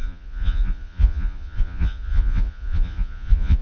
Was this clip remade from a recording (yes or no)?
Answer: yes